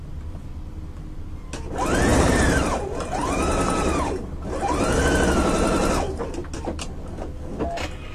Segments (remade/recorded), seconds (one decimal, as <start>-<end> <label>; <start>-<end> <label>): 0.0-2.1 recorded; 2.1-5.0 remade; 5.0-8.1 recorded